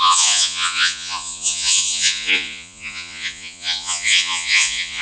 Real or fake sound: fake